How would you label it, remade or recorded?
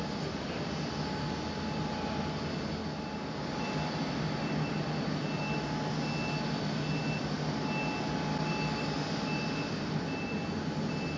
recorded